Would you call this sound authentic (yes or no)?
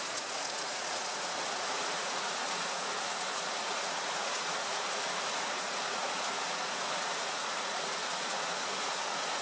no